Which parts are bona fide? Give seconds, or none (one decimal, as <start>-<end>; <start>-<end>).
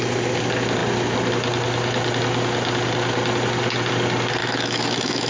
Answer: 0.0-4.4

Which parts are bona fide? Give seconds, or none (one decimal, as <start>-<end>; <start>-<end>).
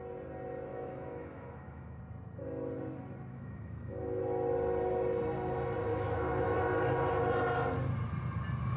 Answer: 0.0-0.7; 2.0-3.3; 4.2-5.9; 6.6-8.8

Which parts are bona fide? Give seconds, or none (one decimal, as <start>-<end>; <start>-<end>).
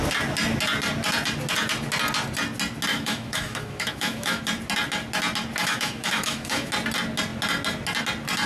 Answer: 0.0-2.9; 4.4-5.6; 6.7-8.5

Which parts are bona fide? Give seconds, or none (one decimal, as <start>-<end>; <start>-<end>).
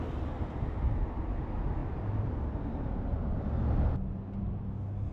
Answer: 0.0-5.1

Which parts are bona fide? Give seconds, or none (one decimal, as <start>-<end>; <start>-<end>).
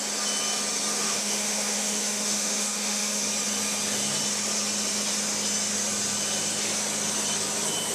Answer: 0.0-0.9; 3.2-7.9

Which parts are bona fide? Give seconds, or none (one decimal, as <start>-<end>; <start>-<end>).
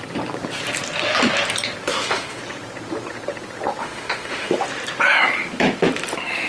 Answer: 0.0-1.9; 2.4-3.8; 4.5-6.5